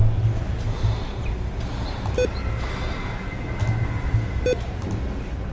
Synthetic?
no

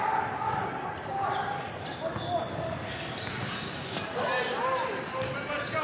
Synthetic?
no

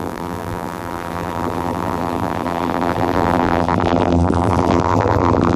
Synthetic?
yes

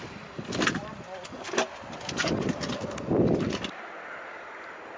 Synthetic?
no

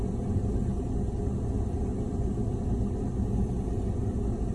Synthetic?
no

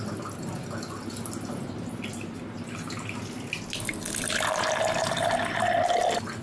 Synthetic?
no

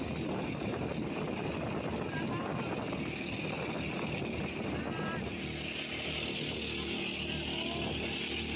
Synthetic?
no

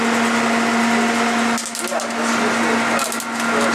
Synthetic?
no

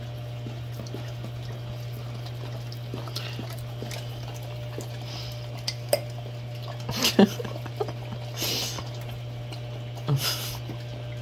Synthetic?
no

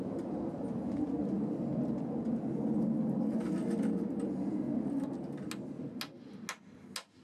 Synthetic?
no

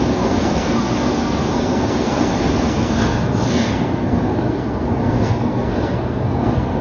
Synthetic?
yes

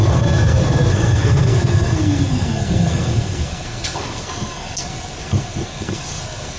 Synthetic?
yes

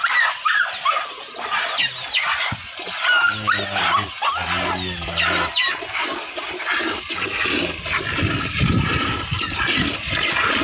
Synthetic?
no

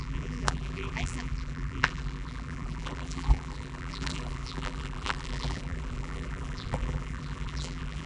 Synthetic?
yes